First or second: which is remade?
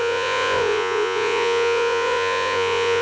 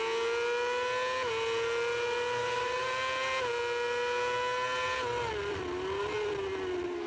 first